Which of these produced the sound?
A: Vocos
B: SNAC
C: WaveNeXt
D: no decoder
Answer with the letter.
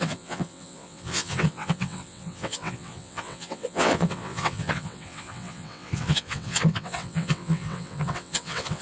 C